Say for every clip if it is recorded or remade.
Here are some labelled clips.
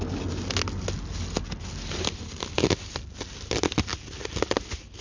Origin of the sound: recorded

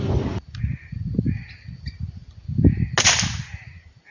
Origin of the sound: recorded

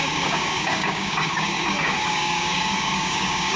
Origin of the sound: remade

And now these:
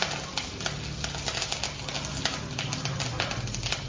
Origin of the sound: recorded